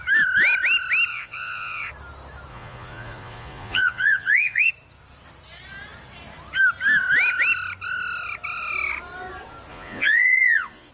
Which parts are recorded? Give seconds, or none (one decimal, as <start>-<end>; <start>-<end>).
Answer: 0.0-1.1; 1.9-2.5; 4.7-9.7